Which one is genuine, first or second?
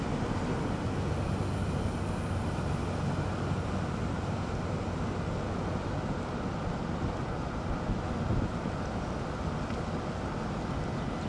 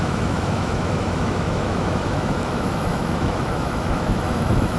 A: first